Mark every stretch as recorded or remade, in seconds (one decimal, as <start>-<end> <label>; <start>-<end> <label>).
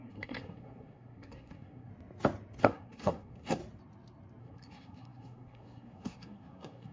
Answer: 0.0-1.9 remade; 1.9-2.6 recorded; 2.6-3.6 remade; 3.6-4.4 recorded; 4.4-6.9 remade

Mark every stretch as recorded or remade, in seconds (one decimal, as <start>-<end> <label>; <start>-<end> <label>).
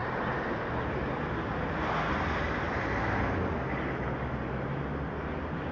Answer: 0.0-5.7 recorded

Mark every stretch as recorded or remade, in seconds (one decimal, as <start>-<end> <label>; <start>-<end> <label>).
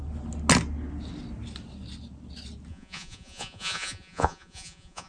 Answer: 0.0-2.7 recorded; 2.7-5.1 remade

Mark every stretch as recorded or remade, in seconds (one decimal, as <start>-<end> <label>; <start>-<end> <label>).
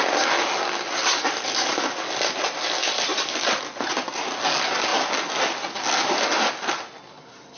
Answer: 0.0-7.6 recorded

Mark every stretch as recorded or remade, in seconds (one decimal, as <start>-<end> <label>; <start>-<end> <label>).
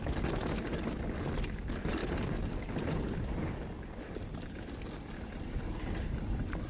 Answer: 0.0-6.7 recorded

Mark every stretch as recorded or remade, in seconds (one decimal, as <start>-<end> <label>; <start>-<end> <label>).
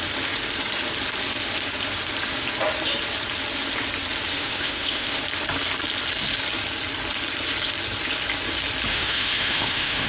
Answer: 0.0-4.3 recorded; 4.3-5.2 remade; 5.2-8.9 recorded; 8.9-10.1 remade